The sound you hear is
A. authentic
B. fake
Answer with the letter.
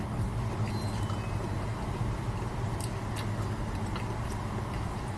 A